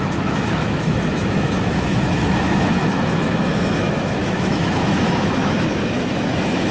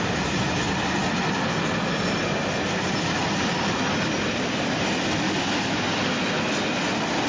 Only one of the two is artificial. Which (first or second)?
first